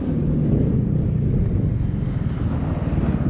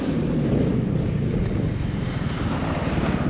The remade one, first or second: second